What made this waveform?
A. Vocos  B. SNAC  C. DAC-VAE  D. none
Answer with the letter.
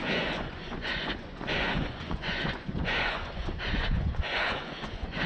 A